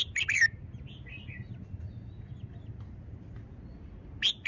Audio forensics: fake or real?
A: real